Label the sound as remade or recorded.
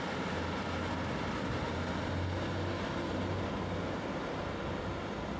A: recorded